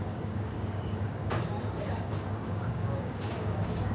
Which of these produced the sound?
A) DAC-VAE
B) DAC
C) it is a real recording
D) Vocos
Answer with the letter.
B